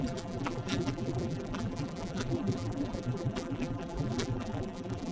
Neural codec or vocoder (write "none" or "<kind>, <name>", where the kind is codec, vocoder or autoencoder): vocoder, BigVGAN v2